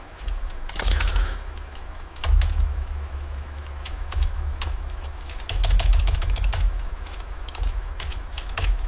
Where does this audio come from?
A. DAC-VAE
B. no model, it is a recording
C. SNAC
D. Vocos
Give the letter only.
A